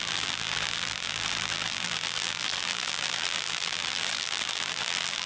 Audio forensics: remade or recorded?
remade